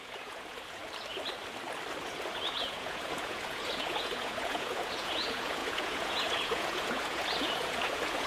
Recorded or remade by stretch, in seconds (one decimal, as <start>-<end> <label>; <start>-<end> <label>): 0.0-0.8 remade; 0.8-2.0 recorded; 2.0-8.3 remade